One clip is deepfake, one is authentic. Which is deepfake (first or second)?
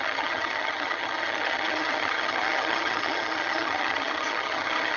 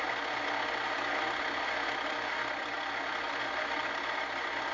first